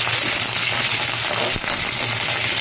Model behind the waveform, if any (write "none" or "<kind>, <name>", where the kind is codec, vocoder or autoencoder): none